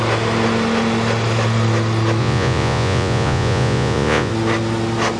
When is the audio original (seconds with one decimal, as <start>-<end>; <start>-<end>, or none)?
0.0-2.2; 4.3-5.2